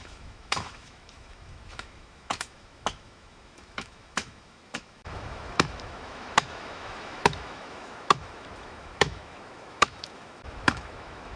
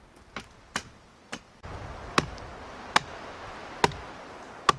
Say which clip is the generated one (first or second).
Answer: first